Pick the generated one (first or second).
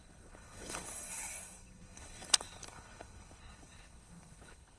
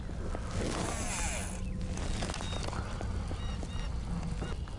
first